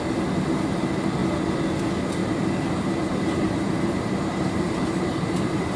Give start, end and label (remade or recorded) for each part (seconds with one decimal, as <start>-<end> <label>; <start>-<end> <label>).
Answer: 0.0-2.2 recorded; 2.2-5.8 remade